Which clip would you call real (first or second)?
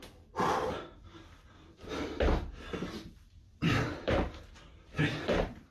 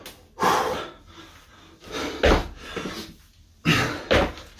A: second